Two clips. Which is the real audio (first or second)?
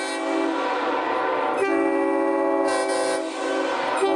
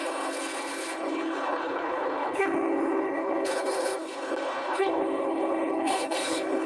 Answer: first